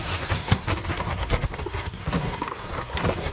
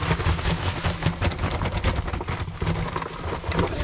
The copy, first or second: first